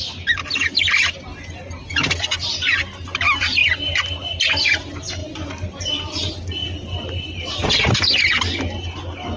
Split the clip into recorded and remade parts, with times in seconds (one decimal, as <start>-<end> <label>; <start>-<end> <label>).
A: 0.0-9.4 recorded